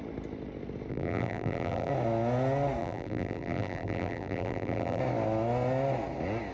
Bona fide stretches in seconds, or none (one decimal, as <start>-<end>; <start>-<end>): 0.0-0.9; 1.9-2.8; 5.0-6.5